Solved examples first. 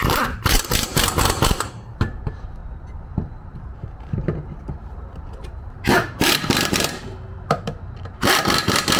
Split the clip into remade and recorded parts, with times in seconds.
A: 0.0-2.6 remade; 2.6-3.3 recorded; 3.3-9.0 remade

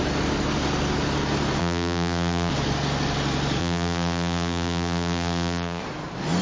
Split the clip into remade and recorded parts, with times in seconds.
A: 0.0-1.6 recorded; 1.6-2.5 remade; 2.5-3.6 recorded; 3.6-5.8 remade; 5.8-6.4 recorded